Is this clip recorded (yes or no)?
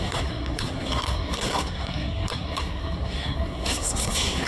no